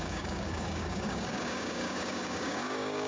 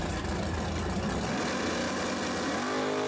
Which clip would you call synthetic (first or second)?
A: first